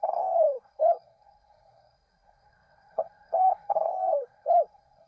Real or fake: fake